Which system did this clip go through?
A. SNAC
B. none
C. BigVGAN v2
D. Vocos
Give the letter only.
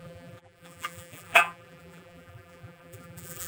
C